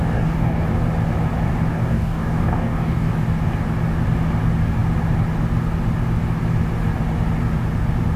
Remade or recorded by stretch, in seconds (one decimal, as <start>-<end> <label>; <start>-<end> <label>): 0.0-0.6 remade; 0.6-1.7 recorded; 1.7-3.1 remade; 3.1-8.2 recorded